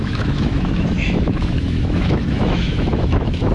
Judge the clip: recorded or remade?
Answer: remade